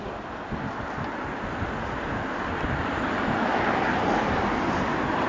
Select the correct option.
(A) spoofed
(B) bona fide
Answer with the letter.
B